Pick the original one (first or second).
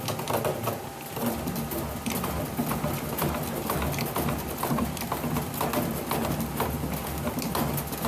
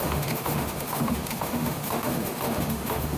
first